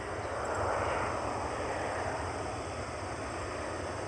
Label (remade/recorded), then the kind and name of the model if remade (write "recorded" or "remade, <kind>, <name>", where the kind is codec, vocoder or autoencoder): recorded